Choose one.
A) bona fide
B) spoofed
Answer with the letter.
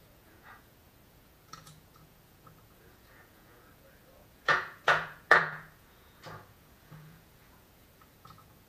B